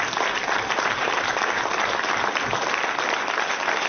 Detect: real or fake real